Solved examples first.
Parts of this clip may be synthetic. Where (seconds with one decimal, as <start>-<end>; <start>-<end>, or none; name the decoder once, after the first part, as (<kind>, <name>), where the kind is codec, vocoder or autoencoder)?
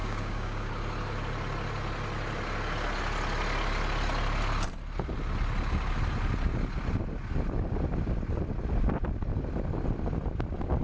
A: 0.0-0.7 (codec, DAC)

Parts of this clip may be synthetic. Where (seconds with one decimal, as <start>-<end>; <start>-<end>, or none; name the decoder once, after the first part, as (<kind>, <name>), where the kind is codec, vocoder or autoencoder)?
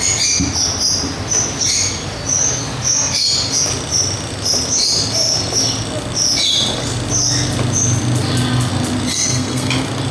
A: 9.1-9.7 (codec, SNAC)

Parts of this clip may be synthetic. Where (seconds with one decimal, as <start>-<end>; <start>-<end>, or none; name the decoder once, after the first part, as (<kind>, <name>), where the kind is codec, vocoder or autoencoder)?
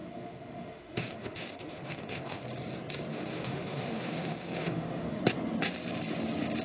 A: 0.0-2.4 (autoencoder, DAC-VAE); 3.1-5.2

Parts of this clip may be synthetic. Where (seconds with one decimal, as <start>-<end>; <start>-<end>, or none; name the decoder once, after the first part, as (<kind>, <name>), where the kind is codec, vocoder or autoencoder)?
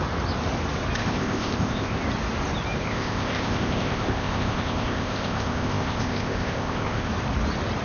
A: 1.0-2.0 (codec, ZipCodec); 2.8-7.1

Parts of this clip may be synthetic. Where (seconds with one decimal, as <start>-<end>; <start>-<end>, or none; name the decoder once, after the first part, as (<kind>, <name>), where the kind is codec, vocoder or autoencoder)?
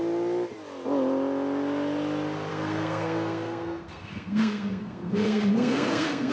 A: 2.5-6.3 (codec, SNAC)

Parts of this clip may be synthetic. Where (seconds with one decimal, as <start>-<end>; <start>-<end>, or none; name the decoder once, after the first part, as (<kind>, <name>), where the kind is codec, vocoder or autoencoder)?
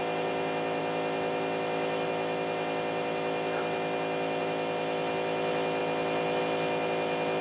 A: none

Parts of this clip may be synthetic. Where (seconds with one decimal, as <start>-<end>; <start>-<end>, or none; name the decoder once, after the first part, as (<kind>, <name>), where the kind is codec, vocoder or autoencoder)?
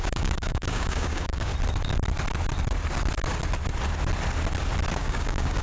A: 0.0-1.5 (codec, DAC); 4.9-5.6